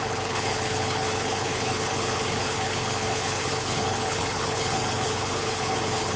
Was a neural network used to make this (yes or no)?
yes